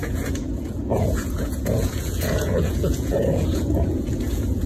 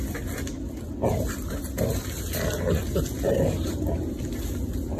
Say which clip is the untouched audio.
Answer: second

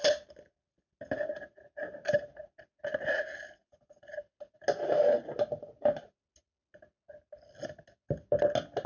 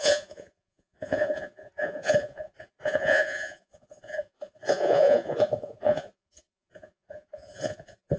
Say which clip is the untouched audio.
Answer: first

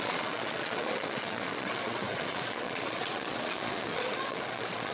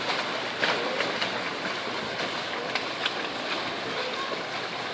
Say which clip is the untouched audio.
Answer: second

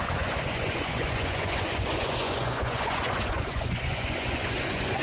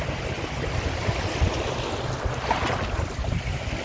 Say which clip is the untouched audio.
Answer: second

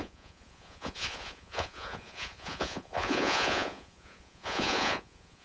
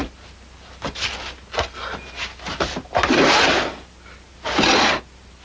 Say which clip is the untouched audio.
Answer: second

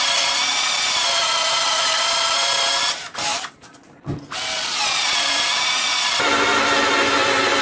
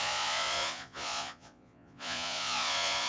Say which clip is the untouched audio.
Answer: first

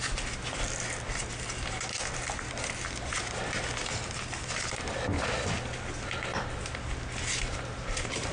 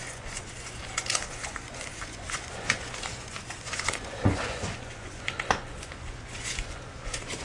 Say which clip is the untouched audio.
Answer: first